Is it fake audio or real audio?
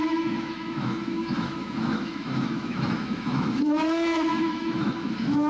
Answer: fake